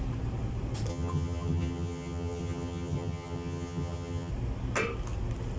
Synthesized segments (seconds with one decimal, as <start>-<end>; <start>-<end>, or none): 0.9-4.3